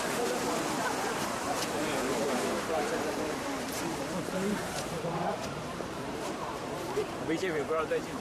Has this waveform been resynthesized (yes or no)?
yes